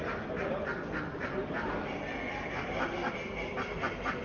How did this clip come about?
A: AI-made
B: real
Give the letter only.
B